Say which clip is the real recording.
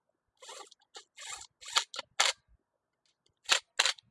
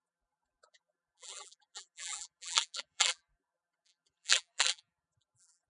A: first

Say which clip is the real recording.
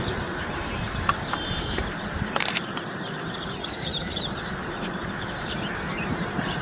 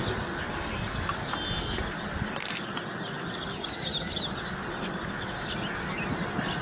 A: second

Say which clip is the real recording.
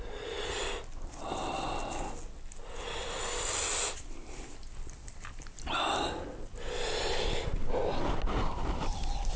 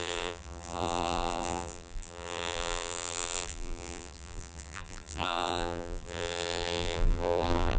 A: first